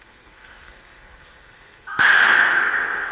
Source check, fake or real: fake